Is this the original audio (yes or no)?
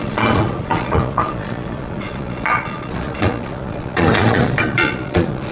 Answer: no